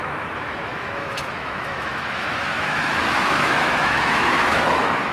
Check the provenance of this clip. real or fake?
fake